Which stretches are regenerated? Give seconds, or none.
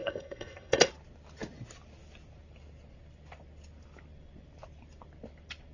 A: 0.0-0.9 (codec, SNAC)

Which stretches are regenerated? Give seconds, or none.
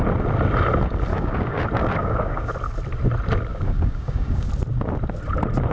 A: 1.1-1.6 (codec, DAC); 2.0-2.5; 3.5-4.5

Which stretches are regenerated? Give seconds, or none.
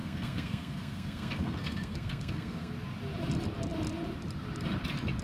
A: 0.0-2.7 (codec, SNAC)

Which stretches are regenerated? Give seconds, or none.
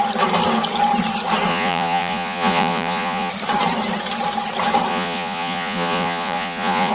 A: 1.5-3.3 (vocoder, Vocos); 4.9-6.9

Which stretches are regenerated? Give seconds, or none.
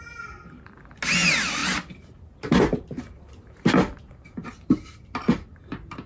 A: none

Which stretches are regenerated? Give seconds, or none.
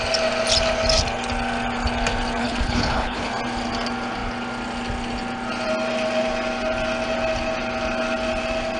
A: 2.4-3.3 (codec, HILCodec)